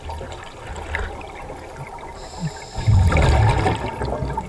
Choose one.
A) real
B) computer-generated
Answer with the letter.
A